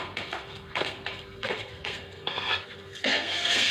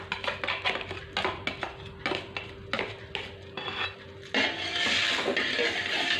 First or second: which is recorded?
second